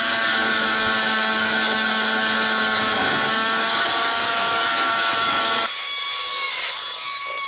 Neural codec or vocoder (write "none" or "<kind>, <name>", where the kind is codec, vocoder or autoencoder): codec, DAC